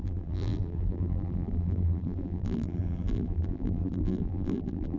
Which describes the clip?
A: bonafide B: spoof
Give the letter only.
B